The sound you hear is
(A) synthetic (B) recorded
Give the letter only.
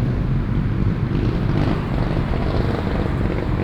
B